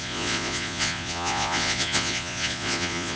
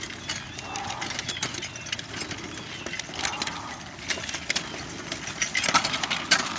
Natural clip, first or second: second